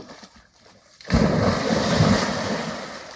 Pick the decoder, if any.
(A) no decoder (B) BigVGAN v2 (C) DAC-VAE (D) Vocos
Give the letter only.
B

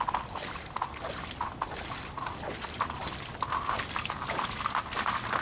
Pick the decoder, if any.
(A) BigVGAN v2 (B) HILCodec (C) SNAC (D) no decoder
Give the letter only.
A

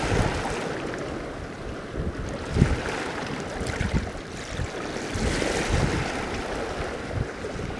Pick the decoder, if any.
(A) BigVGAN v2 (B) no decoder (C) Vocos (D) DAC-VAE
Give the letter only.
B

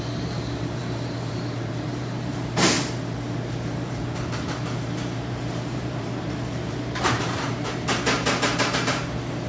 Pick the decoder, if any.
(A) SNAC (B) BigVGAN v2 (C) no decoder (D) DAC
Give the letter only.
B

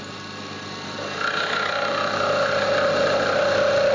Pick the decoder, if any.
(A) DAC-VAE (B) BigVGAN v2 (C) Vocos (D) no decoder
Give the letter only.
D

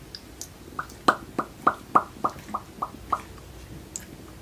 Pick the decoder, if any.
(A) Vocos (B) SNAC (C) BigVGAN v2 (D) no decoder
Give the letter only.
D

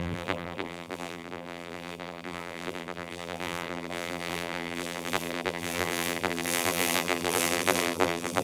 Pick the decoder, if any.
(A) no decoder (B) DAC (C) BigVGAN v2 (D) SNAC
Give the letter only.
C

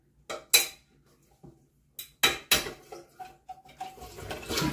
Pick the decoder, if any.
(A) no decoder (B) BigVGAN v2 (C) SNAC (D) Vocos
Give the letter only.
A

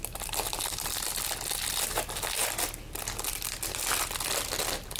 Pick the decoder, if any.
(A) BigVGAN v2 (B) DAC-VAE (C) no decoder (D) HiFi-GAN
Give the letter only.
C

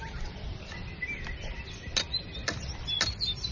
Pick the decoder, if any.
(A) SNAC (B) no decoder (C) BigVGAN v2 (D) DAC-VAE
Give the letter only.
B